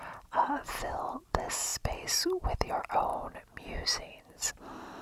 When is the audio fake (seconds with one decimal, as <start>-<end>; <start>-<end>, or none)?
0.0-3.1; 4.5-5.0